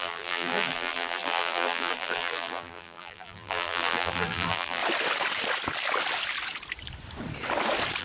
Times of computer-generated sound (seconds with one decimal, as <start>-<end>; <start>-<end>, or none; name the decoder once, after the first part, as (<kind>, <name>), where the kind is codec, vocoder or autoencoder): 0.0-4.8 (vocoder, BigVGAN v2)